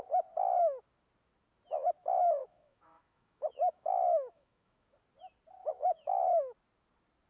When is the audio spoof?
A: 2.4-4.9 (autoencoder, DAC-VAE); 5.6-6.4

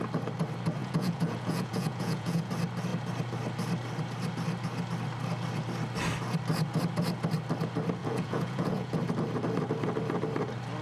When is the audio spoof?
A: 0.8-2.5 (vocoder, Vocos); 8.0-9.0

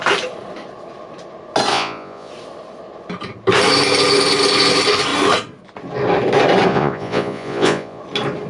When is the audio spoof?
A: 1.7-2.3 (vocoder, Vocos); 6.7-8.0

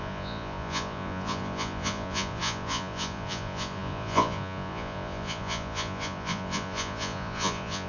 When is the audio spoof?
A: 0.0-7.9 (vocoder, Vocos)

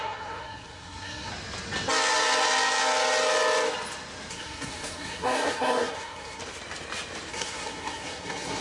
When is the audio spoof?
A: 0.0-1.3 (codec, SNAC); 4.3-6.4; 7.3-8.6

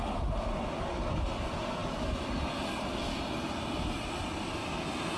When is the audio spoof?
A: none

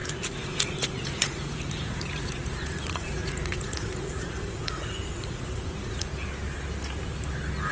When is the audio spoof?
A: 0.0-6.1 (vocoder, Vocos)

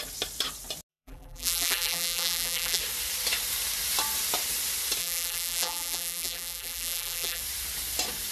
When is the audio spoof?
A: 0.9-2.8 (vocoder, BigVGAN v2); 5.0-7.4